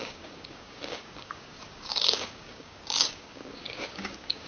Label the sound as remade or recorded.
remade